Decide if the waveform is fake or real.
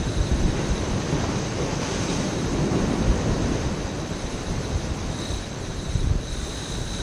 fake